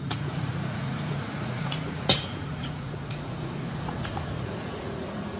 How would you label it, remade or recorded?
remade